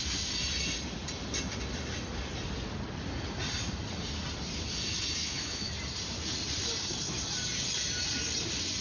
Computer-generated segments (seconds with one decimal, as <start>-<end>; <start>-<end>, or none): 5.2-5.7